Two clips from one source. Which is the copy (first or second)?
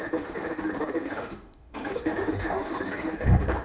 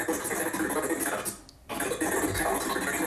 first